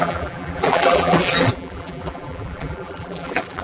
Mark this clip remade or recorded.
remade